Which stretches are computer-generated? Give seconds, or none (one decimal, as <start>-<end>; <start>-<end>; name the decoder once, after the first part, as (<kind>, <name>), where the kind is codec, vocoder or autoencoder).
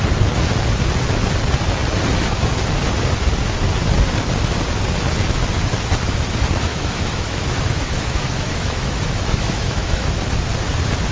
6.7-10.2 (autoencoder, DAC-VAE)